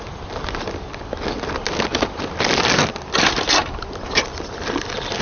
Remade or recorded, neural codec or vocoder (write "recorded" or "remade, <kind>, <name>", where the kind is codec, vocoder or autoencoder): recorded